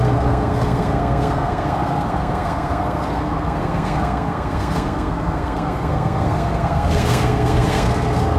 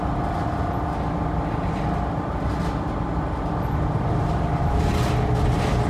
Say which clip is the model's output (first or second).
first